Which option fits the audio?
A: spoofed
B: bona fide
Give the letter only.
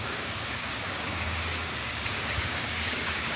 A